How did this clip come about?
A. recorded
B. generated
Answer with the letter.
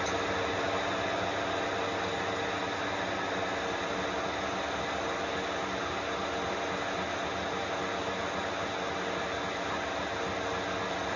A